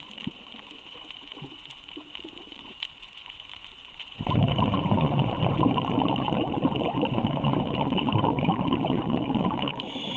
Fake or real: fake